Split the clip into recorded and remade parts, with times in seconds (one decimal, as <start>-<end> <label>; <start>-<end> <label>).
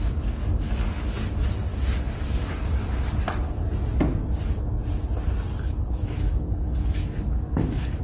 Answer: 0.0-0.4 recorded; 0.4-1.1 remade; 1.1-1.7 recorded; 1.7-3.2 remade; 3.2-5.5 recorded; 5.5-8.0 remade